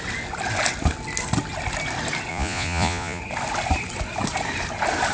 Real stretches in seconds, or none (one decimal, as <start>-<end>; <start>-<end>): 0.0-2.3; 3.2-5.1